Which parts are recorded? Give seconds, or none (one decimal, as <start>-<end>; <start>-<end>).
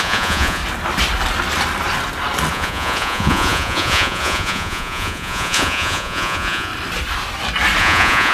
0.6-2.5; 6.7-7.8